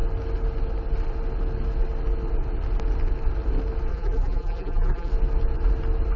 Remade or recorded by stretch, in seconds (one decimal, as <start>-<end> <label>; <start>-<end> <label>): 0.0-3.9 recorded; 3.9-5.1 remade; 5.1-6.2 recorded